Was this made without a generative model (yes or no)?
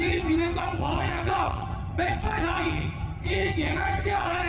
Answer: no